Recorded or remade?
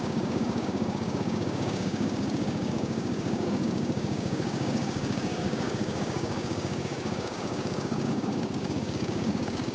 remade